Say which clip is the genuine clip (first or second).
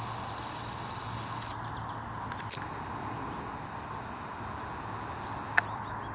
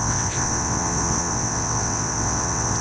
first